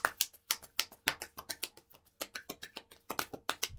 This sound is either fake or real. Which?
real